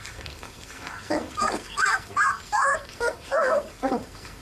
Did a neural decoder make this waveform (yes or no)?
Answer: yes